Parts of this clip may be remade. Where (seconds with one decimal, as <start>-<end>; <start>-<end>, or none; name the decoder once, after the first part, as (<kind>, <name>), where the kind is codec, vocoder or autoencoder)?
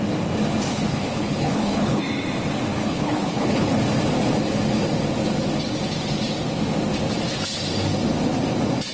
0.7-2.0 (codec, HILCodec); 2.8-3.8